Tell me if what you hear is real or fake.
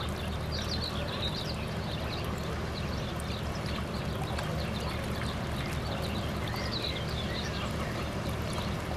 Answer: real